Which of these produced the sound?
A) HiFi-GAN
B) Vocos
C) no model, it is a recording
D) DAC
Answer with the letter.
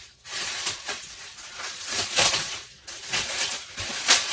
B